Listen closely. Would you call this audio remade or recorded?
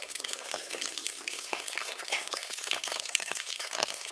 remade